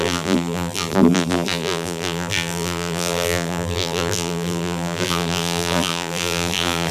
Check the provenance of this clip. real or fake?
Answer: fake